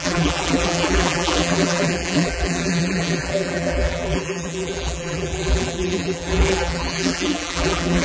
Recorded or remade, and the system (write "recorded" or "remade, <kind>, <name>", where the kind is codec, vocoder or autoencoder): remade, vocoder, BigVGAN v2